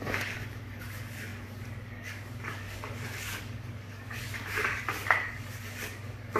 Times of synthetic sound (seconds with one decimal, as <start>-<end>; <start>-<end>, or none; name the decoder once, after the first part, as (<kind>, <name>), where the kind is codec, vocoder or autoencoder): 0.0-6.4 (codec, DAC)